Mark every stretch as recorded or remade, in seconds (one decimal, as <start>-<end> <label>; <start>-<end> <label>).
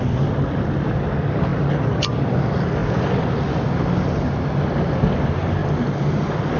0.0-6.6 recorded